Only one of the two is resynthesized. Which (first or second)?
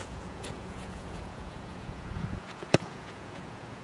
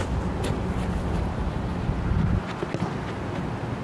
first